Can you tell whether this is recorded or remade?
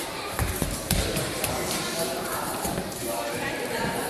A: remade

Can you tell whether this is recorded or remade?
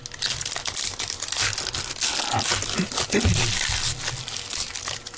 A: recorded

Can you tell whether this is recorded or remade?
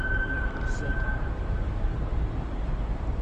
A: remade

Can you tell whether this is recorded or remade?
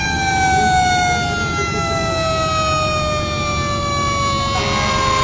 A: recorded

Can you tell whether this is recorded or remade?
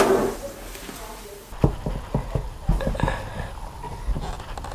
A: recorded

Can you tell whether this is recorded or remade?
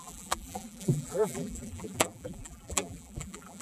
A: remade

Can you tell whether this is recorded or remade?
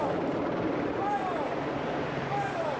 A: remade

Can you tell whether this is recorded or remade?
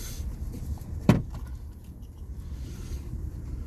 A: remade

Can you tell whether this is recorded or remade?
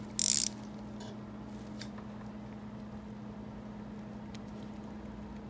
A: recorded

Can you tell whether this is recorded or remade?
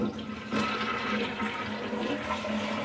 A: recorded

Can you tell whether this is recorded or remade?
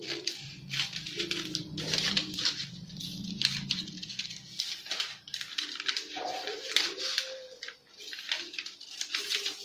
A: recorded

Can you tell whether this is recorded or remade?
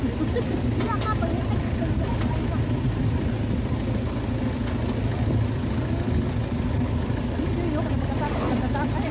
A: recorded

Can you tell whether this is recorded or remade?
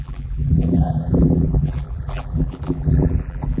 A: remade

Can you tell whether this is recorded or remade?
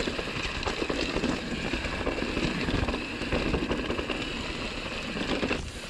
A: recorded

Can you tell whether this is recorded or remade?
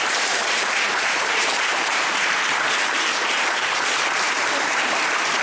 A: remade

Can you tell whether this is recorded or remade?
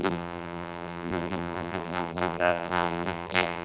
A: remade